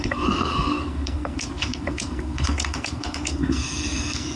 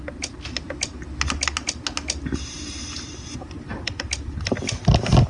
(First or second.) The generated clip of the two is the first